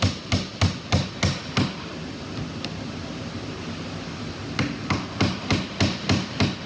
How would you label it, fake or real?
real